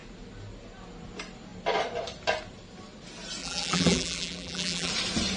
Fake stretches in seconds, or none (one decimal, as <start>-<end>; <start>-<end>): 3.4-4.9